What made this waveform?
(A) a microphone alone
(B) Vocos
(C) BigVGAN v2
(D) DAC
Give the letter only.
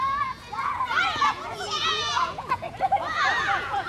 B